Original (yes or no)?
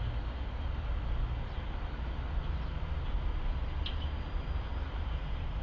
yes